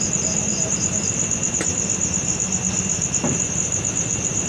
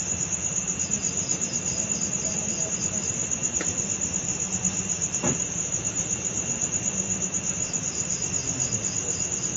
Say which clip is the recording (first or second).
first